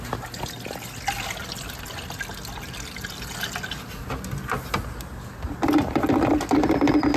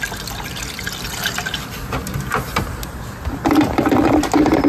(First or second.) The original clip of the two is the first